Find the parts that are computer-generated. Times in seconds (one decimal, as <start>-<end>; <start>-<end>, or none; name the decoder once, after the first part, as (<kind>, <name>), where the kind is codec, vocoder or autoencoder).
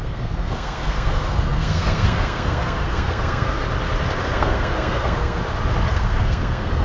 0.0-3.6 (codec, SNAC); 4.2-5.4; 5.9-6.8